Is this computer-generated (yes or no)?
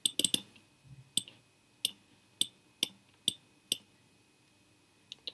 no